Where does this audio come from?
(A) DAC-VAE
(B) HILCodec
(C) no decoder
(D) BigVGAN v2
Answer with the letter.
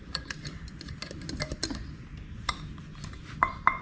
C